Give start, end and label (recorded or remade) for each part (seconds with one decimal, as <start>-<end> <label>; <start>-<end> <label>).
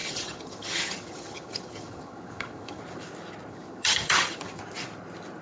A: 0.0-2.8 remade; 2.8-3.5 recorded; 3.5-4.6 remade; 4.6-5.4 recorded